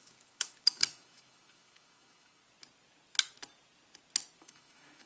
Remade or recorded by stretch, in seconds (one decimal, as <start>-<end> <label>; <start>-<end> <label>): 0.0-2.4 remade; 2.4-4.4 recorded; 4.4-5.1 remade

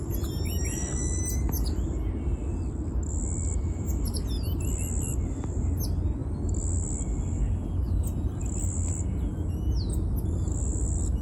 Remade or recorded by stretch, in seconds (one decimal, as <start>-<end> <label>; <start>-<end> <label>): 0.0-11.2 recorded